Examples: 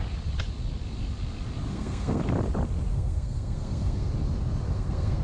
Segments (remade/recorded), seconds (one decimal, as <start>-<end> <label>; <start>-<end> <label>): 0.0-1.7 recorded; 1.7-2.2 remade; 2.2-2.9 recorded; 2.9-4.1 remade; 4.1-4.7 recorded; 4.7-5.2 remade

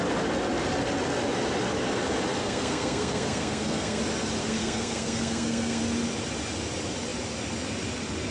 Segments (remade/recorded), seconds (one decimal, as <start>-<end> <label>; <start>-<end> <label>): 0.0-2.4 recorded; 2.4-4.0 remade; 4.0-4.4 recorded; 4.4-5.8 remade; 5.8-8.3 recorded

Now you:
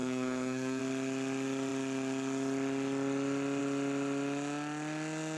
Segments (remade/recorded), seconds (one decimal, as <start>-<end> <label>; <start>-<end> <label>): 0.0-0.8 remade; 0.8-5.4 recorded

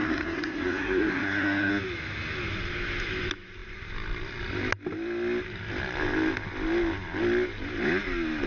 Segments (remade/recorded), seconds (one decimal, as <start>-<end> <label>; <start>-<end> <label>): 0.0-1.7 remade; 1.7-8.5 recorded